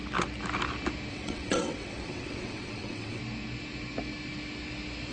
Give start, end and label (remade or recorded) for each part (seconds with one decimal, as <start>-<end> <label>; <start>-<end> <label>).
0.0-1.1 recorded; 1.1-3.2 remade; 3.2-5.1 recorded